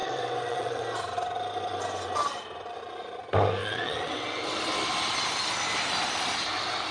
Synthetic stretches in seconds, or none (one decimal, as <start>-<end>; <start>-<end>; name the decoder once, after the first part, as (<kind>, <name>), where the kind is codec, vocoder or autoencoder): 0.0-0.8 (vocoder, WaveNeXt); 3.6-4.4